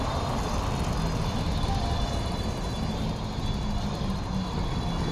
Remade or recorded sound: recorded